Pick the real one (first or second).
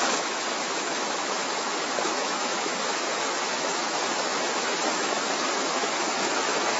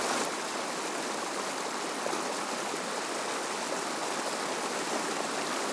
second